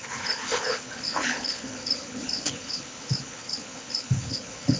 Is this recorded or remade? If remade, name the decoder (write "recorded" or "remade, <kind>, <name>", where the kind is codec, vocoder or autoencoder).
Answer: remade, codec, HILCodec